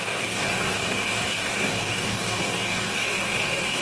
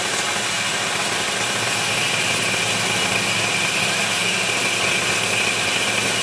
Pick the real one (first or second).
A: second